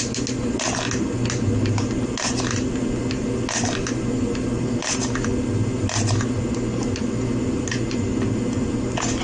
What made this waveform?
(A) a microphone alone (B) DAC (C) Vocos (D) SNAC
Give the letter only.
A